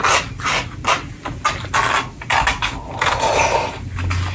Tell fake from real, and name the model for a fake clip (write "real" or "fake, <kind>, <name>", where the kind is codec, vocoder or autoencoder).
real